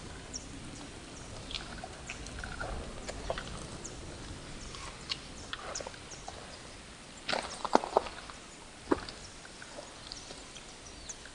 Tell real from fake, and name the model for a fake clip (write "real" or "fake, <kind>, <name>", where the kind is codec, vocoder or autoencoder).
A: real